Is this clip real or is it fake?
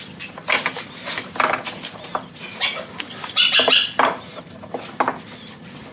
real